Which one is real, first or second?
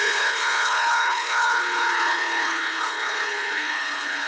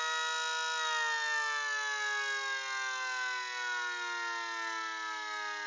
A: second